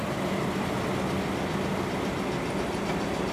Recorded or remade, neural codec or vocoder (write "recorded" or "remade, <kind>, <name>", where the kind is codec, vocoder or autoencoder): recorded